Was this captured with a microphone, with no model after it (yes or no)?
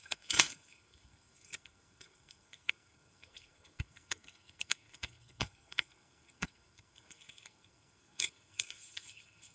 no